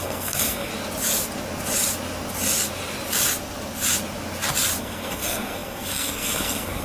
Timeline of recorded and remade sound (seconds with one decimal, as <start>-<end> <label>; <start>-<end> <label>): 0.0-0.7 remade; 0.7-4.8 recorded; 4.8-6.8 remade